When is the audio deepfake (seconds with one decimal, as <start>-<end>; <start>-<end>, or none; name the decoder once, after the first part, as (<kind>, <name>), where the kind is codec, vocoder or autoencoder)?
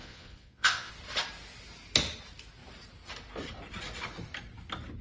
0.0-0.9 (vocoder, Vocos)